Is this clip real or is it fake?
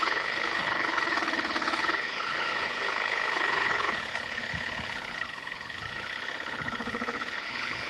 fake